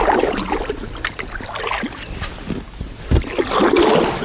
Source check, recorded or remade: recorded